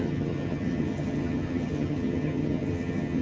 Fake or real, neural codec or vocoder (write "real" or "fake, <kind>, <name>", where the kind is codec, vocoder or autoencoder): fake, vocoder, HiFi-GAN